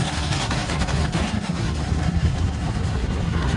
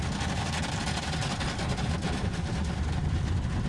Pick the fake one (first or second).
first